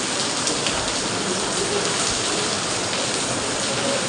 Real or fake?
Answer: real